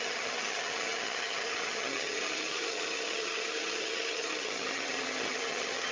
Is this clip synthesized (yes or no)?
yes